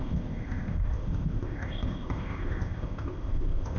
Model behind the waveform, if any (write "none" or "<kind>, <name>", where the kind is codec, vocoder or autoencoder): codec, ZipCodec